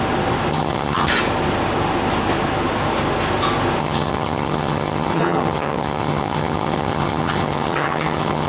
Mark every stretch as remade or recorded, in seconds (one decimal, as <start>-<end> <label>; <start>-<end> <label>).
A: 0.0-0.5 recorded; 0.5-1.1 remade; 1.1-3.8 recorded; 3.8-8.5 remade